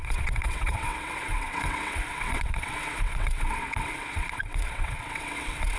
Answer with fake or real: fake